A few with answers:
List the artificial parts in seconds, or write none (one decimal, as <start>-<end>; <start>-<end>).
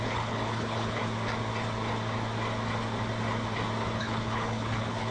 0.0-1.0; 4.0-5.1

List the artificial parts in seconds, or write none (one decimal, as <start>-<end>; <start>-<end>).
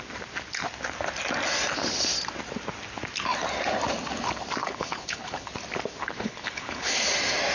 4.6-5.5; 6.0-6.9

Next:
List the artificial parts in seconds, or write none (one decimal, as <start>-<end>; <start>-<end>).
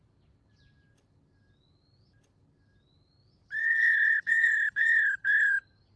3.6-5.5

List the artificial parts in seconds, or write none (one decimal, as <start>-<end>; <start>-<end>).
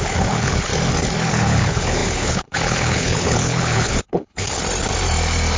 0.0-0.7; 1.3-4.6